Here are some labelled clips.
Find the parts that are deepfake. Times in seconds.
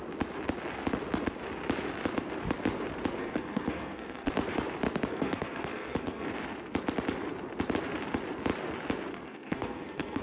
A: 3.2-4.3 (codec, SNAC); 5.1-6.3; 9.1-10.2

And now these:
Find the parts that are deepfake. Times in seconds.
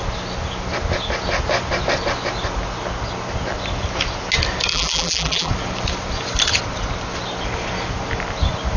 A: 4.7-5.5 (vocoder, BigVGAN v2)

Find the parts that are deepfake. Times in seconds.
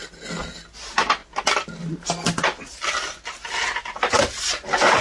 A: none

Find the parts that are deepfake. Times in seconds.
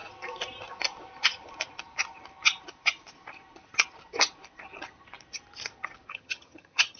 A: 6.1-7.0 (vocoder, HiFi-GAN)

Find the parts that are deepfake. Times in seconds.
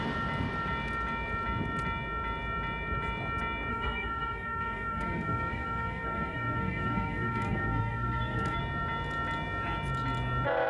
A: 3.7-8.6 (codec, SNAC)